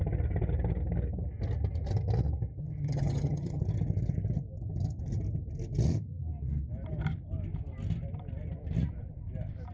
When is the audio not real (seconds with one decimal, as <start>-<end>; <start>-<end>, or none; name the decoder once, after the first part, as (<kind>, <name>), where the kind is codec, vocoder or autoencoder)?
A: 2.6-3.6 (vocoder, HiFi-GAN)